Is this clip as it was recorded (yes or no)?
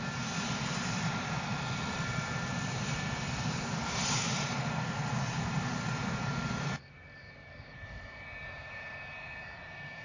no